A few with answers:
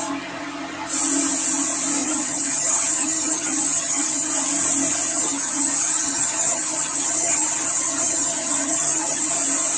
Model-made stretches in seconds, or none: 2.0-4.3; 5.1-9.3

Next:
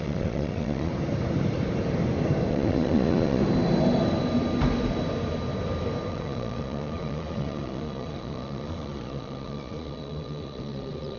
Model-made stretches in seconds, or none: 0.0-0.9; 2.5-3.4; 6.1-11.2

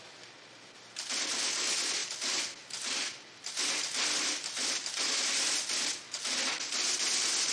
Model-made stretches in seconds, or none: none